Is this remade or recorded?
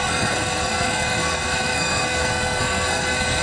remade